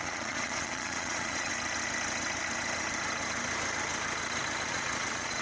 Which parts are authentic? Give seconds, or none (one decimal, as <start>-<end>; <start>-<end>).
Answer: 1.5-4.7